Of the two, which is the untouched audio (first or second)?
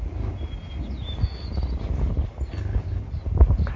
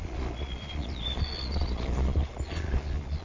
first